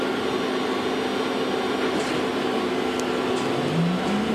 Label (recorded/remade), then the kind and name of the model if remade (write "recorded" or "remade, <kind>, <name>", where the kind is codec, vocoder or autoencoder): recorded